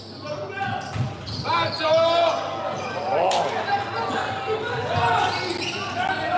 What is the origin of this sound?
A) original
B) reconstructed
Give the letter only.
A